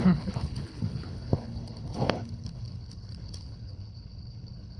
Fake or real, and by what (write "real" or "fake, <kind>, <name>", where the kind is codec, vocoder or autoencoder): fake, codec, HILCodec